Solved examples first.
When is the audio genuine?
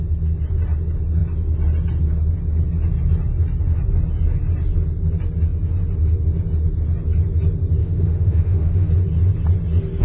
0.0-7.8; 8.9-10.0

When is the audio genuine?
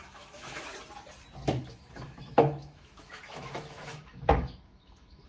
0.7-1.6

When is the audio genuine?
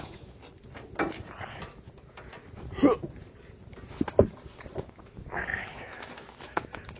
0.4-4.6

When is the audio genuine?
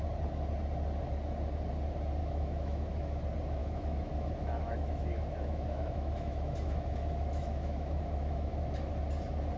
0.0-2.2; 3.2-3.6; 8.9-9.6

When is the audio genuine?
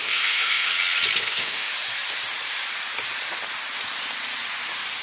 0.7-1.2; 1.7-5.0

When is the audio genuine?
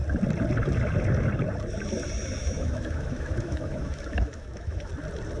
0.0-2.4; 4.9-5.4